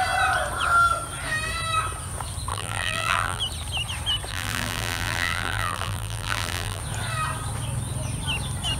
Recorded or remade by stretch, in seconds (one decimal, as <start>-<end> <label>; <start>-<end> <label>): 0.0-2.5 recorded; 2.5-3.4 remade; 3.4-4.3 recorded; 4.3-6.8 remade; 6.8-8.8 recorded